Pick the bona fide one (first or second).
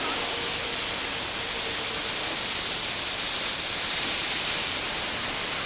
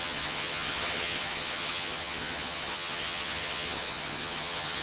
first